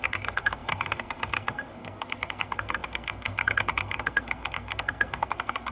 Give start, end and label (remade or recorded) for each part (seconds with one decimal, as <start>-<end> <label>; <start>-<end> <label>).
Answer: 0.0-5.7 remade